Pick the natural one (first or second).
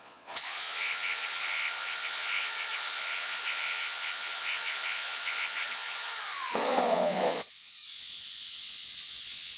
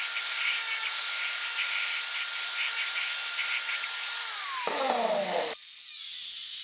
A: second